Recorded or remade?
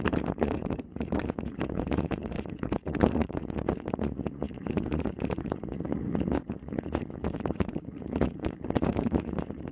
remade